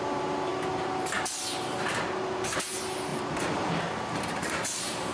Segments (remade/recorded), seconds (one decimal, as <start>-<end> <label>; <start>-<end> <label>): 0.0-3.1 recorded; 3.1-5.1 remade